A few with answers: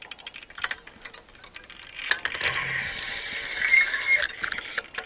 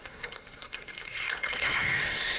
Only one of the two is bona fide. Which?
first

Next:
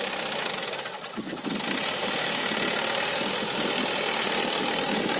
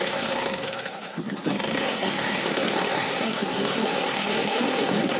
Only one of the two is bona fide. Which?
first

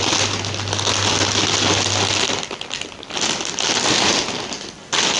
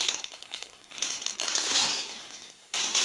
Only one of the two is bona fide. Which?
first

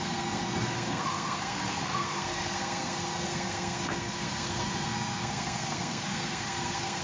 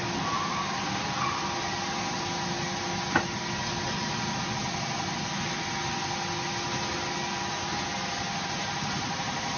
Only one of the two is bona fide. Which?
second